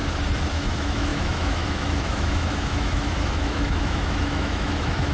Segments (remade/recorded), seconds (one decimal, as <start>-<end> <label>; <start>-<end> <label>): 0.0-0.5 recorded; 0.5-5.1 remade